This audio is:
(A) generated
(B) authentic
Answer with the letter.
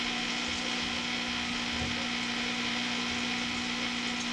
B